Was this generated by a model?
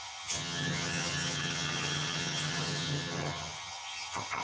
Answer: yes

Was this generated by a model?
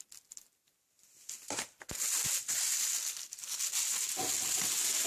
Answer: no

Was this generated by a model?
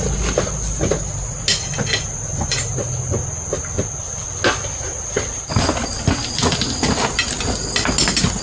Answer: no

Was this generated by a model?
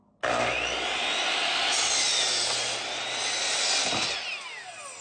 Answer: no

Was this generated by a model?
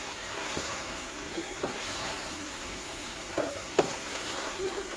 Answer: yes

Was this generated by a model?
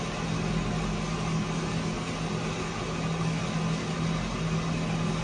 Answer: no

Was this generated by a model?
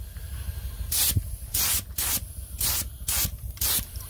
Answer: no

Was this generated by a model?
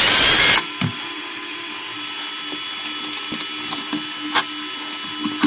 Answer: no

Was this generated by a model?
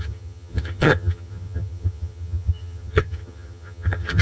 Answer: yes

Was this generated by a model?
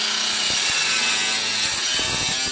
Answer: no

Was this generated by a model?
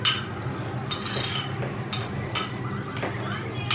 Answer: no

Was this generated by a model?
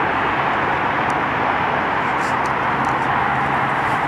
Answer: no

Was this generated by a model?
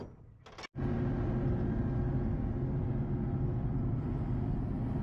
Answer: no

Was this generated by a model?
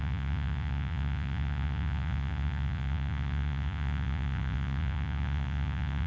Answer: yes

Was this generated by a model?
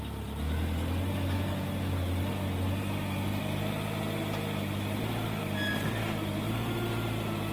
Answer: no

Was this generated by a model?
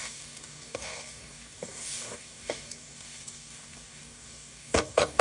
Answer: yes